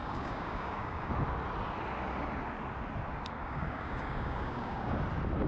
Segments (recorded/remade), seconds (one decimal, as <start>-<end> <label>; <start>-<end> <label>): 0.0-1.1 remade; 1.1-3.4 recorded; 3.4-5.0 remade; 5.0-5.5 recorded